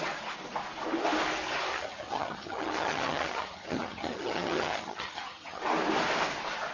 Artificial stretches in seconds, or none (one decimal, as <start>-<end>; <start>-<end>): 1.7-5.6